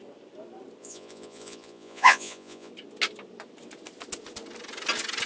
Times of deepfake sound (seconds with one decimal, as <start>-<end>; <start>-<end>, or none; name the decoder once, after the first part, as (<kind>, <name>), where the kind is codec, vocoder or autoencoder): 0.8-2.7 (vocoder, Vocos)